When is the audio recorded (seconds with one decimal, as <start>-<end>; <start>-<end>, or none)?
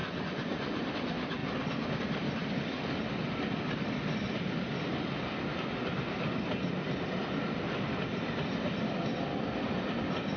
0.8-10.4